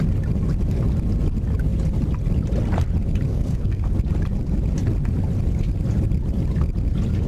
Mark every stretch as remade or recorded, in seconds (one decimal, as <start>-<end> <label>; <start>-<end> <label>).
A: 0.0-3.3 recorded; 3.3-3.9 remade; 3.9-7.3 recorded